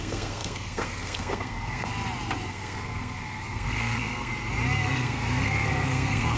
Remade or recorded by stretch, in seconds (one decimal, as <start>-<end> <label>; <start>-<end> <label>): 0.0-1.9 remade; 1.9-2.5 recorded; 2.5-4.3 remade; 4.3-4.8 recorded; 4.8-6.4 remade